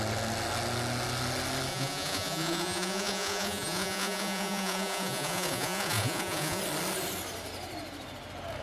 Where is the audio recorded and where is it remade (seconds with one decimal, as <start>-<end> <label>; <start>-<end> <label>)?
0.0-1.7 recorded; 1.7-6.6 remade; 6.6-8.6 recorded